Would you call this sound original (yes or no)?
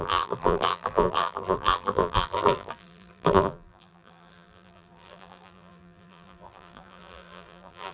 no